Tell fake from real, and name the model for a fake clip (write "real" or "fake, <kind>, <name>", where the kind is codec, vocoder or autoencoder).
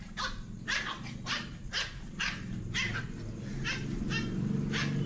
real